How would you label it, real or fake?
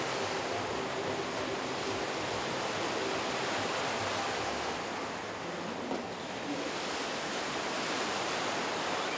real